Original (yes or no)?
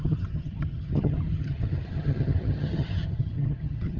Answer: no